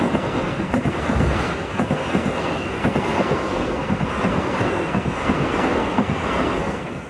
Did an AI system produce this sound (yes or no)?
yes